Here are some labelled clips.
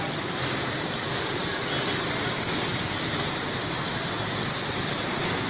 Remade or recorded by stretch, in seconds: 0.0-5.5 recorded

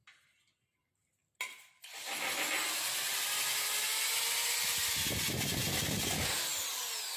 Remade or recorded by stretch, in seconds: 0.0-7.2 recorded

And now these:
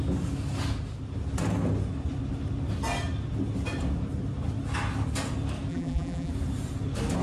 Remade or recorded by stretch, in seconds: 0.0-5.7 recorded; 5.7-6.3 remade; 6.3-7.2 recorded

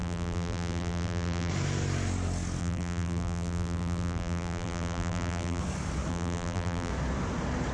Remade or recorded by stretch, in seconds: 0.0-1.5 remade; 1.5-2.6 recorded; 2.6-5.6 remade; 5.6-6.1 recorded; 6.1-6.9 remade; 6.9-7.7 recorded